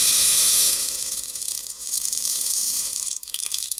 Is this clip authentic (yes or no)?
no